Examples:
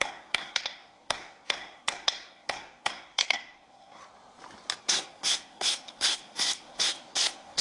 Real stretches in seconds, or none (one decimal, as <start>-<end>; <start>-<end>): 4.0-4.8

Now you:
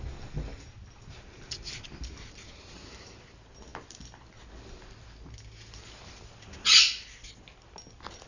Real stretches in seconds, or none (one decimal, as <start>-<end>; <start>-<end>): 0.0-8.3

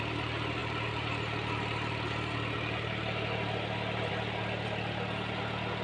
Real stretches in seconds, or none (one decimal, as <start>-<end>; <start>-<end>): 0.0-5.8

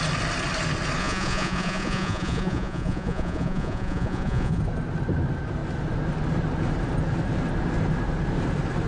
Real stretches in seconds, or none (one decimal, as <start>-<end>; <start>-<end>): 0.0-1.0; 4.6-8.9

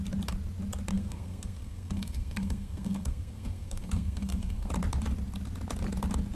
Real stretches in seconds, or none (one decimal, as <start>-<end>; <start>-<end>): 0.0-0.9; 4.7-6.3

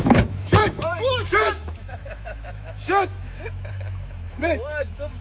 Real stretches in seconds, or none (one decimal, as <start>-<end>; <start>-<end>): none